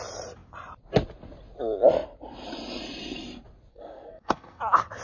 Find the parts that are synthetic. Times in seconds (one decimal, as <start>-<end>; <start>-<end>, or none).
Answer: 3.7-4.6